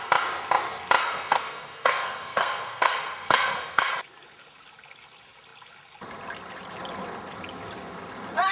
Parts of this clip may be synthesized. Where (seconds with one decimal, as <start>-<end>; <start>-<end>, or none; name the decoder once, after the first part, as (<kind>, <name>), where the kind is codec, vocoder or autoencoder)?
1.0-3.9 (codec, SNAC)